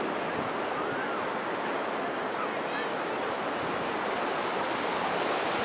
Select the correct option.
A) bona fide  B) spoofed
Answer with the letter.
A